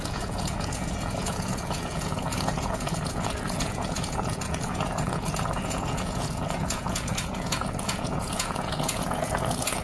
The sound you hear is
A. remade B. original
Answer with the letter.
A